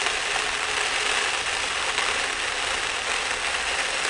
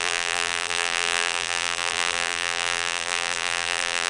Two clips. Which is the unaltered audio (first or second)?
first